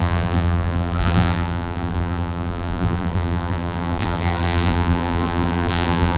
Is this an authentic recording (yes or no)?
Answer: no